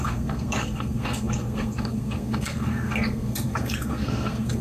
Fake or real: fake